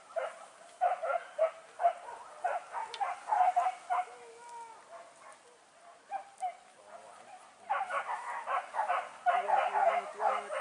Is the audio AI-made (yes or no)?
no